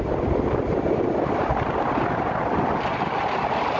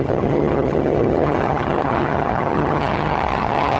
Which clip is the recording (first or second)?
first